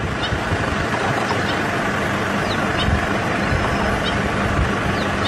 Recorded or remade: recorded